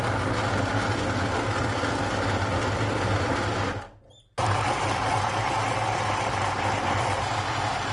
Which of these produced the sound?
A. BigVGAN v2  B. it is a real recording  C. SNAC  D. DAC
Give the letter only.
B